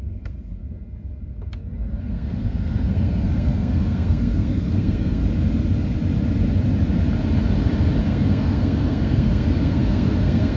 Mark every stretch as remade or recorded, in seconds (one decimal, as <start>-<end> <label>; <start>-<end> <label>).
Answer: 0.0-0.6 remade; 0.6-2.0 recorded; 2.0-5.2 remade; 5.2-8.0 recorded; 8.0-10.6 remade